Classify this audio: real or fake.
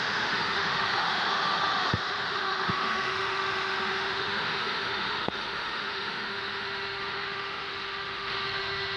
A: fake